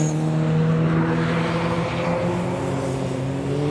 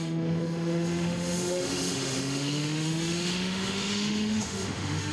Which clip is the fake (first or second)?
second